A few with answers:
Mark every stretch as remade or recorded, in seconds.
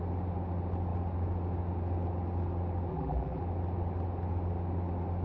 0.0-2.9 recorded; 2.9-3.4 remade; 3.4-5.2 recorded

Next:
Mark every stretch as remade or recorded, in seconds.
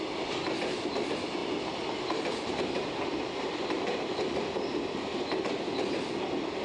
0.0-6.6 recorded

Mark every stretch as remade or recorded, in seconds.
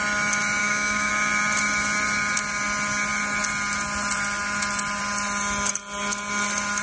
0.0-0.6 recorded; 0.6-1.1 remade; 1.1-6.8 recorded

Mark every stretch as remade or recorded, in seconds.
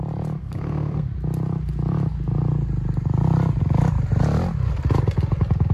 0.0-0.4 recorded; 0.4-1.1 remade; 1.1-5.7 recorded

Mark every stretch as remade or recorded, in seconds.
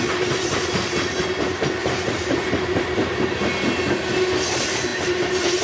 0.0-1.8 recorded; 1.8-3.4 remade; 3.4-5.6 recorded